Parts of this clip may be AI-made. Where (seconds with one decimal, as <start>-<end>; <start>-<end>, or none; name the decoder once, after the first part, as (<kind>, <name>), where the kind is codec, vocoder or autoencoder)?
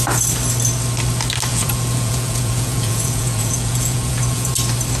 1.5-4.5 (vocoder, Vocos)